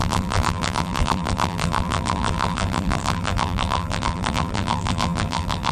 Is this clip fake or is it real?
fake